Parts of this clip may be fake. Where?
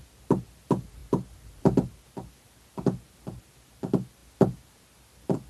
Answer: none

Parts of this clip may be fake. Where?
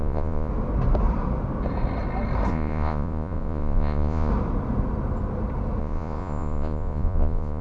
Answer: 0.0-0.5; 2.5-4.3; 5.8-7.6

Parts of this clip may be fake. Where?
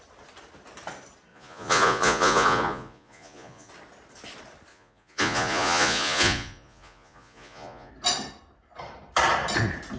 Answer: 1.3-3.7; 4.7-7.9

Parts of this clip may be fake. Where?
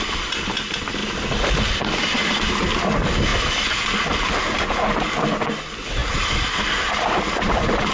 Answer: none